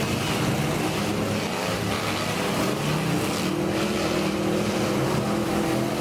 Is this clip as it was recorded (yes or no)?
yes